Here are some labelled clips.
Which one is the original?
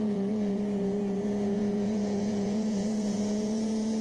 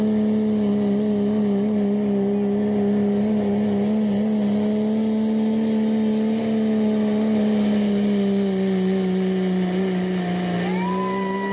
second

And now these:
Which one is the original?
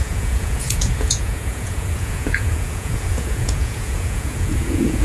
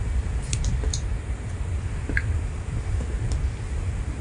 second